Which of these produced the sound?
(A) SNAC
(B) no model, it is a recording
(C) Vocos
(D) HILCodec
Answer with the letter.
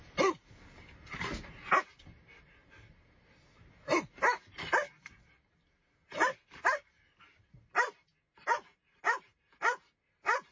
B